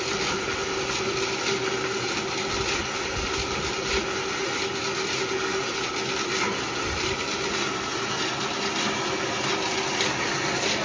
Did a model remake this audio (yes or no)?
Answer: no